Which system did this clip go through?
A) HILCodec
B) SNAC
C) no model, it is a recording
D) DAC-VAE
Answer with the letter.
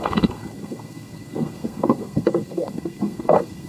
B